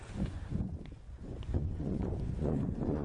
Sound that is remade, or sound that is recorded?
remade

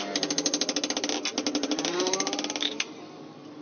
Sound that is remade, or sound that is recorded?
recorded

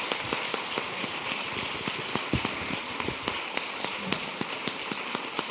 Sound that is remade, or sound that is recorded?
recorded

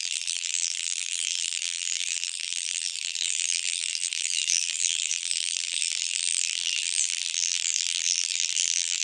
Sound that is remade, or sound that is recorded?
remade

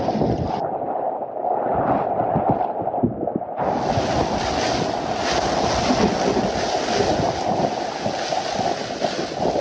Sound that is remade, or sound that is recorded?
recorded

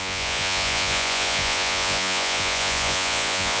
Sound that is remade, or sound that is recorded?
remade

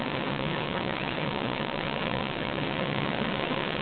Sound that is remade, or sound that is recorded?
remade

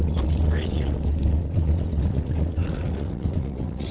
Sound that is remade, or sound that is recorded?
remade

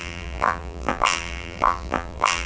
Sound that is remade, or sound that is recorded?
remade